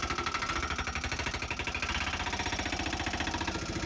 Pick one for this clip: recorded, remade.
recorded